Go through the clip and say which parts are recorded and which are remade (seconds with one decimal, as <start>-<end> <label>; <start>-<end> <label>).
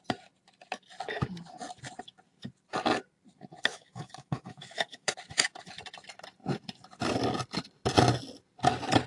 0.0-3.7 recorded; 3.7-5.1 remade; 5.1-9.1 recorded